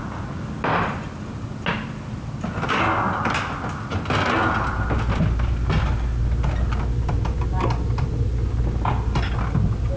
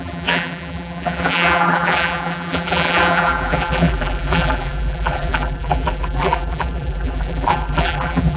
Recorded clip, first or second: first